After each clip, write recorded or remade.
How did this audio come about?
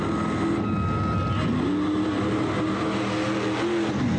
recorded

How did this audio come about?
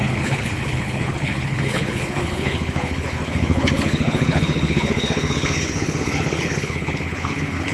remade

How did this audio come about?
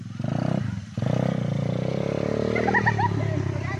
recorded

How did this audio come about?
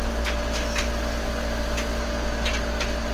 recorded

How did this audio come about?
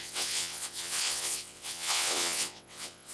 remade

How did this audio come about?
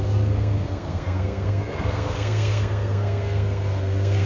remade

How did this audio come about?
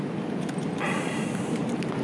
recorded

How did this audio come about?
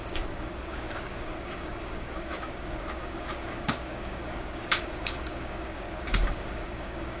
remade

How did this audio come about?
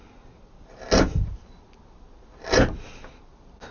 recorded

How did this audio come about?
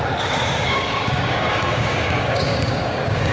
remade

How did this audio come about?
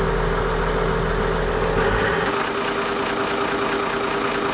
recorded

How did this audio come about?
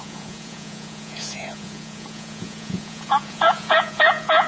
remade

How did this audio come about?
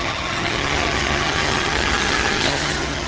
remade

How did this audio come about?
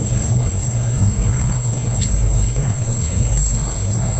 remade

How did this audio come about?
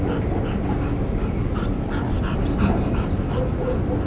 recorded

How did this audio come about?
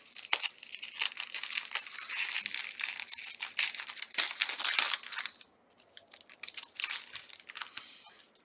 recorded